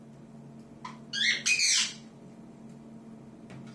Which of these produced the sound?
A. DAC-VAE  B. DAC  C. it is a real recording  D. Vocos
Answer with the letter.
C